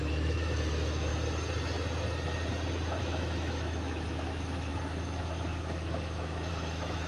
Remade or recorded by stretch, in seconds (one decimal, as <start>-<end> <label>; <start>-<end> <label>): 0.0-1.1 remade; 1.1-3.0 recorded; 3.0-7.1 remade